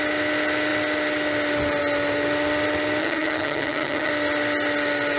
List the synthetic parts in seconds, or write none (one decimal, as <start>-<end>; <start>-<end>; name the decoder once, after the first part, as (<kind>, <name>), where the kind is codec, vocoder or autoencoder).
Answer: 3.0-4.1 (vocoder, HiFi-GAN)